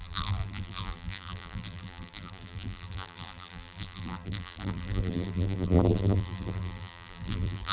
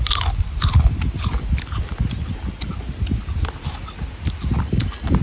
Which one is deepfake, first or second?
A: first